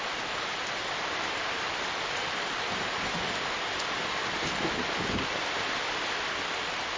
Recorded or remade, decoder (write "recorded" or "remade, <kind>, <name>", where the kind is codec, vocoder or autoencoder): recorded